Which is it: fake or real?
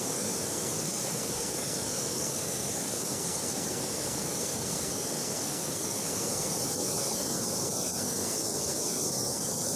fake